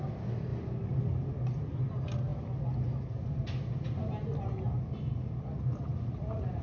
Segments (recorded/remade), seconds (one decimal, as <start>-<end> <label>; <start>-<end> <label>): 0.0-6.6 recorded